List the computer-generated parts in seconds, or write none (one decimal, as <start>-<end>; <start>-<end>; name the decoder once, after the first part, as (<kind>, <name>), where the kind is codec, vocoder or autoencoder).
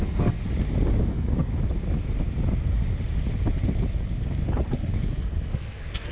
0.0-0.4 (codec, SNAC); 1.0-1.5; 5.2-6.1